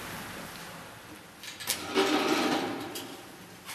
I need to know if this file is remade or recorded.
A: recorded